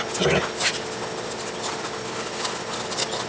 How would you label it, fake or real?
real